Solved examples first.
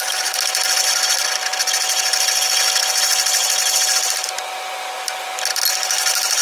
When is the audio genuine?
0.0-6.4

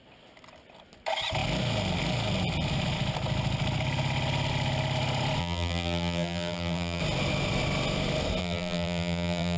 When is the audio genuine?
0.0-5.4; 7.0-8.4